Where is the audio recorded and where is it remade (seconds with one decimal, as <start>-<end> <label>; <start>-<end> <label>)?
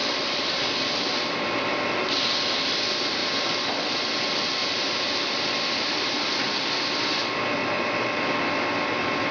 0.0-1.8 remade; 1.8-4.6 recorded; 4.6-6.1 remade; 6.1-9.3 recorded